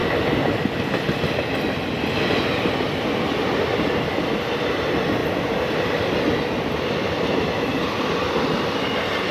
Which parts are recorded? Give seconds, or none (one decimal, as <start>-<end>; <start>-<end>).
0.0-9.3